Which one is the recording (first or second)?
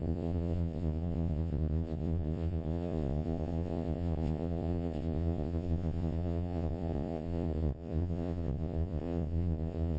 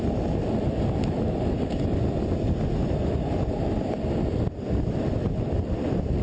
second